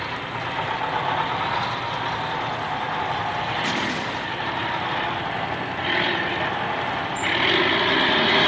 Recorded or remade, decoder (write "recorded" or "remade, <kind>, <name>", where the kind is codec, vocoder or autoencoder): recorded